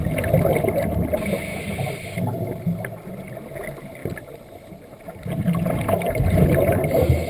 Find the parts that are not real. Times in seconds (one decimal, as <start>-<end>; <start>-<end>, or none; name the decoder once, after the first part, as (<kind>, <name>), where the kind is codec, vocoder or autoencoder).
4.0-4.7 (vocoder, BigVGAN v2)